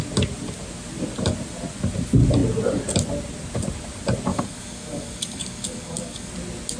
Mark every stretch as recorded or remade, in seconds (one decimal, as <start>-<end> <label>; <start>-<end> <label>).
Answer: 0.0-4.3 recorded; 4.3-6.3 remade; 6.3-6.8 recorded